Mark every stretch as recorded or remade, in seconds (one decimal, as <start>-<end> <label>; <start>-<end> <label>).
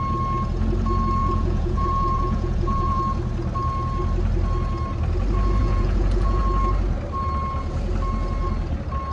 0.0-1.2 recorded; 1.2-3.0 remade; 3.0-5.6 recorded; 5.6-6.4 remade; 6.4-9.1 recorded